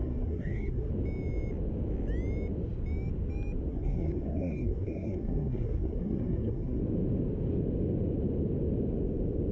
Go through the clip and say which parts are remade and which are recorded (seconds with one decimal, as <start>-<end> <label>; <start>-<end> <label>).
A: 0.0-0.9 remade; 0.9-3.7 recorded; 3.7-6.8 remade; 6.8-9.5 recorded